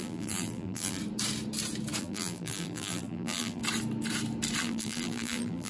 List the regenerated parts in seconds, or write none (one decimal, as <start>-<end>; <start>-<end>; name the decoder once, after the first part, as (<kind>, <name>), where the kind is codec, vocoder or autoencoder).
0.0-1.0 (vocoder, BigVGAN v2); 2.0-3.6; 4.6-5.7